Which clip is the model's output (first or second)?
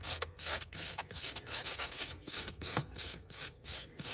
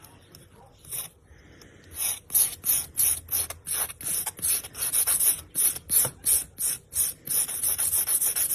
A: first